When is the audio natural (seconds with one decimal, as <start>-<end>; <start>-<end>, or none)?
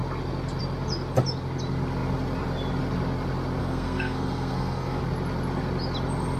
0.0-3.6; 5.0-6.4